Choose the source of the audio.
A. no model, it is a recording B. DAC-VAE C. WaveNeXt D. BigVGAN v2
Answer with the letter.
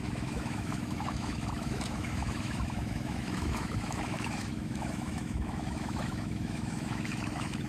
B